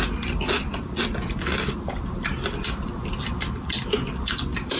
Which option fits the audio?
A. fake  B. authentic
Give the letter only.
B